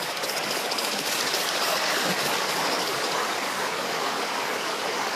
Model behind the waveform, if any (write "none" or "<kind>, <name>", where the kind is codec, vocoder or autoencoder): codec, DAC